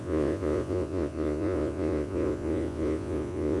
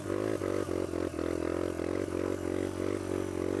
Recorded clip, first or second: second